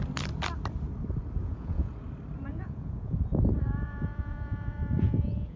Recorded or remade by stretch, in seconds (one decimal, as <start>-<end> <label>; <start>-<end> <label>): 0.0-1.4 recorded; 1.4-1.9 remade; 1.9-2.5 recorded; 2.5-5.6 remade